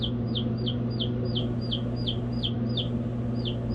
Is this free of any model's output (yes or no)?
yes